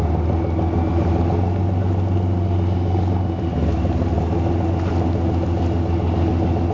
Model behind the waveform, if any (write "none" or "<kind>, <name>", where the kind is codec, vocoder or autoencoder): none